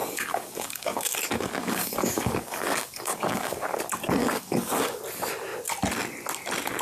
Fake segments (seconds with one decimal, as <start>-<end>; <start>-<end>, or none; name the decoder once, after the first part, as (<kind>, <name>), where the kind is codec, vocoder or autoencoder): 0.0-3.8 (codec, DAC); 4.2-5.0